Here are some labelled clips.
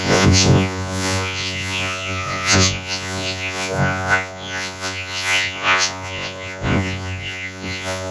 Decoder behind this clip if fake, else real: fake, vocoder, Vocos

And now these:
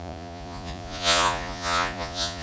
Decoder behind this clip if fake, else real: fake, vocoder, Vocos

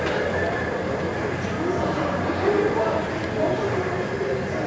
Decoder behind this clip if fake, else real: real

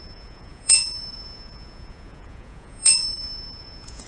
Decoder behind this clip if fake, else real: fake, vocoder, Vocos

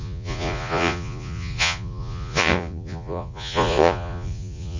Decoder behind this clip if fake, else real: fake, vocoder, Vocos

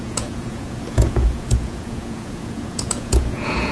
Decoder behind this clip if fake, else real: fake, vocoder, Vocos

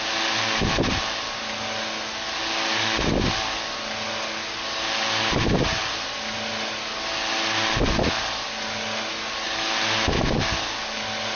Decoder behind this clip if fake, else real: real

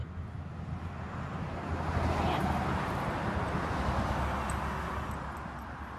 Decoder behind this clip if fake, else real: real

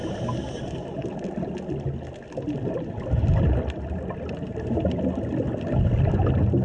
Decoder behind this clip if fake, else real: real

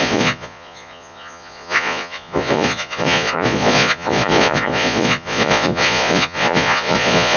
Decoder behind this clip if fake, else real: fake, vocoder, Vocos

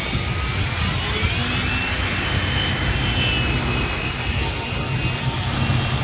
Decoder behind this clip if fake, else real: real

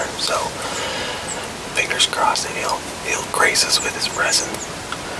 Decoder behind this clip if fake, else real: real